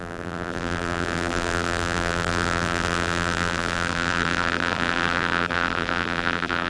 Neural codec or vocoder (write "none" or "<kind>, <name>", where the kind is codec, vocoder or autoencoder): vocoder, BigVGAN v2